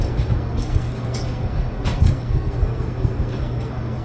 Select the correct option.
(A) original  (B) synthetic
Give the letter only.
B